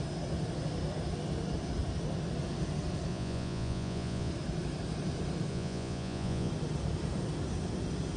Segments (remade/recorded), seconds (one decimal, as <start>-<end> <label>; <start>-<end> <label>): 0.0-3.1 recorded; 3.1-4.3 remade; 4.3-5.5 recorded; 5.5-6.5 remade; 6.5-8.2 recorded